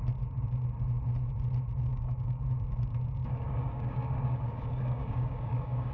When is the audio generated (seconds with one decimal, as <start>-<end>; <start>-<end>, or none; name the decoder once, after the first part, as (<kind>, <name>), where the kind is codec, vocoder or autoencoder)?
1.9-2.4 (codec, DAC); 3.2-5.9